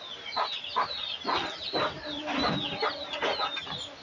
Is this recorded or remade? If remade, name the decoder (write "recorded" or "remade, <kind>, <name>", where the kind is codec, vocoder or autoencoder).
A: recorded